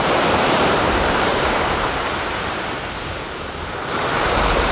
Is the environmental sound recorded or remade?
remade